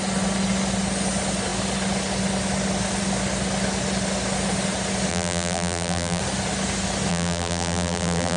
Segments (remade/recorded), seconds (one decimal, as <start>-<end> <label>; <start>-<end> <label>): 0.0-5.1 recorded; 5.1-6.2 remade; 6.2-7.1 recorded; 7.1-8.4 remade